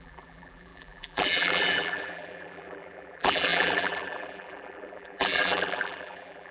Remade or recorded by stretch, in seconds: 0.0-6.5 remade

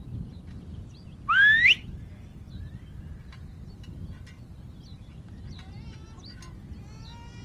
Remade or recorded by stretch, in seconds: 0.0-7.4 recorded

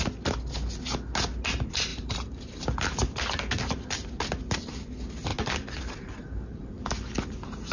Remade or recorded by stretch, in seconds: 0.0-1.9 recorded; 1.9-2.6 remade; 2.6-6.2 recorded; 6.2-6.7 remade; 6.7-7.7 recorded

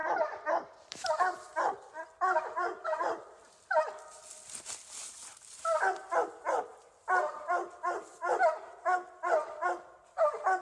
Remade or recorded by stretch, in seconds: 0.0-3.5 remade; 3.5-6.7 recorded; 6.7-7.5 remade; 7.5-10.6 recorded

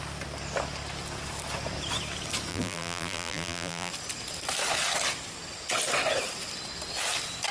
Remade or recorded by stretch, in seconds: 0.0-2.5 recorded; 2.5-3.9 remade; 3.9-7.5 recorded

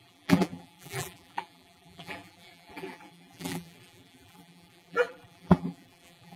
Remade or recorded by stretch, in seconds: 0.0-6.4 remade